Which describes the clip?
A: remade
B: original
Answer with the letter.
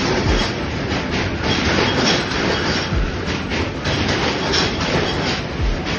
A